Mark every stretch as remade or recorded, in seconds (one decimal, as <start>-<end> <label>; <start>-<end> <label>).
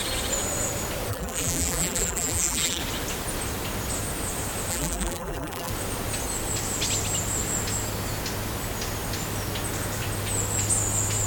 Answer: 0.0-1.1 recorded; 1.1-2.8 remade; 2.8-4.7 recorded; 4.7-5.7 remade; 5.7-11.3 recorded